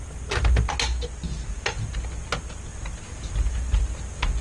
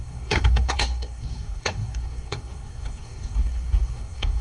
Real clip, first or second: first